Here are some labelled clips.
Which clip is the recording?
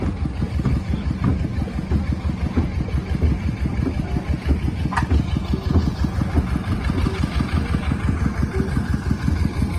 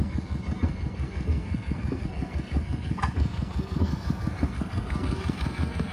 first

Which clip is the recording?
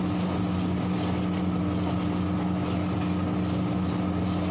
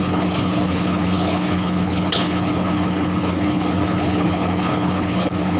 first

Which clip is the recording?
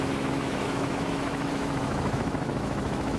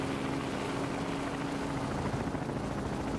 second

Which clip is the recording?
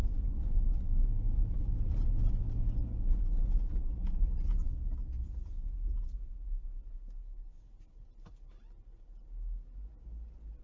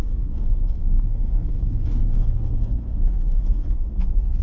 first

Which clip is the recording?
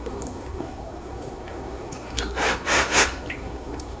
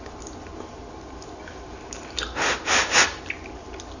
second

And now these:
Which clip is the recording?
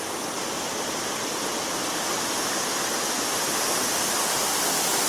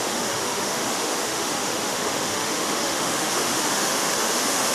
first